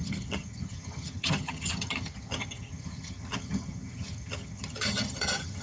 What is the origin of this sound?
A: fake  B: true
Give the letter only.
A